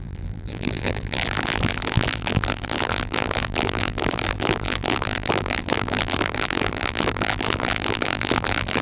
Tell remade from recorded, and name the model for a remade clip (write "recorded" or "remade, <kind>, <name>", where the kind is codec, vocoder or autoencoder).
remade, vocoder, BigVGAN v2